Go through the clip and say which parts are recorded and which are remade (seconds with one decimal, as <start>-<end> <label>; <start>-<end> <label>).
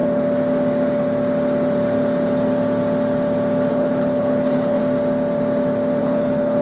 0.0-3.7 recorded; 3.7-4.8 remade; 4.8-6.0 recorded; 6.0-6.6 remade